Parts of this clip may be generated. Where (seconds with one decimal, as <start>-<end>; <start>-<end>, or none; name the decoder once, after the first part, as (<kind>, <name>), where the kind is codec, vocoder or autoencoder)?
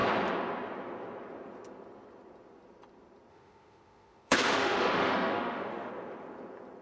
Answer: 3.3-5.9 (autoencoder, DAC-VAE)